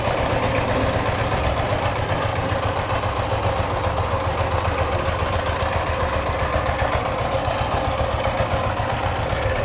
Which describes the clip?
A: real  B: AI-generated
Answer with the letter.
A